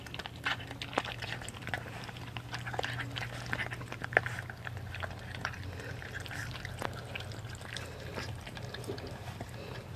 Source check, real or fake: real